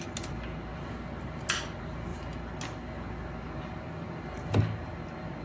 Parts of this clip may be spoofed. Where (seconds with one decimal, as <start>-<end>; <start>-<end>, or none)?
0.7-1.6